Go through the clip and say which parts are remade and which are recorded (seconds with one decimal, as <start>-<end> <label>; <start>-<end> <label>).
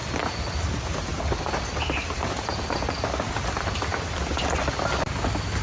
0.0-5.6 recorded